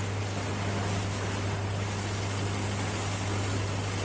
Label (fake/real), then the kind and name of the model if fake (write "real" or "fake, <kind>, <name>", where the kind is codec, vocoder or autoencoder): real